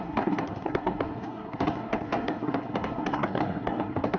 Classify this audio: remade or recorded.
remade